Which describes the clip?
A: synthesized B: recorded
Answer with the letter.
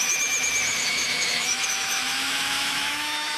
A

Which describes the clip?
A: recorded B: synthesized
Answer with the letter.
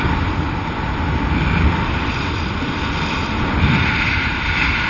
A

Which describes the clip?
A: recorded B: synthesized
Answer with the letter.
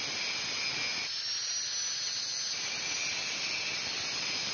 A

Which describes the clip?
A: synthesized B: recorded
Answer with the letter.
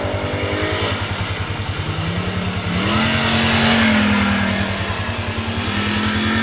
B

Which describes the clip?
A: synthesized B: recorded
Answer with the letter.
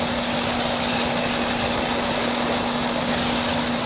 B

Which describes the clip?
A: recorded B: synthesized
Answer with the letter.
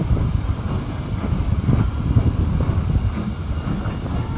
A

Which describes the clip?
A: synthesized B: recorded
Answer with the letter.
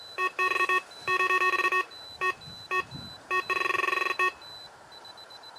A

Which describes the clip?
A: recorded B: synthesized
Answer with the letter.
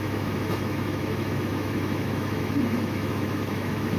B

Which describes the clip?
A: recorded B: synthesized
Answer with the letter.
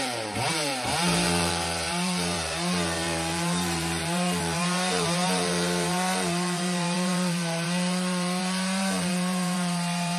B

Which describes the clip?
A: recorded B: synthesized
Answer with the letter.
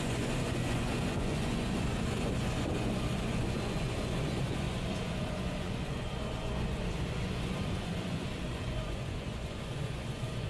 B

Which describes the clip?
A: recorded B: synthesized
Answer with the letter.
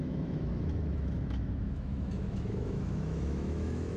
B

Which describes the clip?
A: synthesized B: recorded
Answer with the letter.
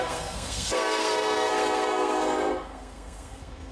A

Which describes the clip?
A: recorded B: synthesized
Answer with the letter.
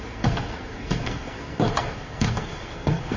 B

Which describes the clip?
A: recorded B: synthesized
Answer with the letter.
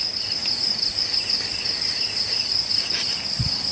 A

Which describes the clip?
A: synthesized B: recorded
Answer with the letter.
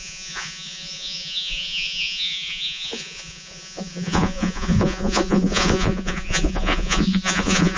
A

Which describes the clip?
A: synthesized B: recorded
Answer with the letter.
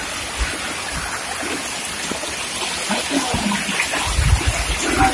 B